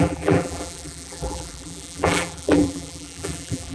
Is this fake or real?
fake